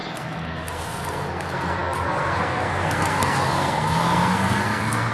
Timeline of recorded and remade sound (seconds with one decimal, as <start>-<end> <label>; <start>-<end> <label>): 0.0-5.1 remade